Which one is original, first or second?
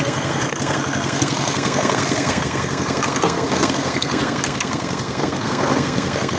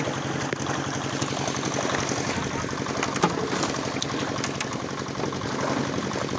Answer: second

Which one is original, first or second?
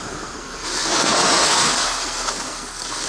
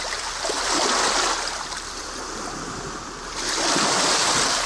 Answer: second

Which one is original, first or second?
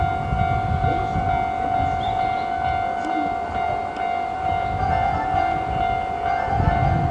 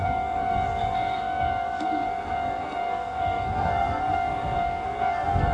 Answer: first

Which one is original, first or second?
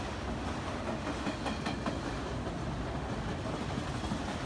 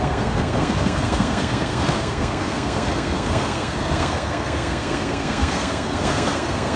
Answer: first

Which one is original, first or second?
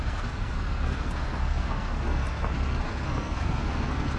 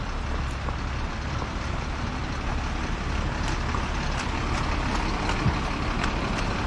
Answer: second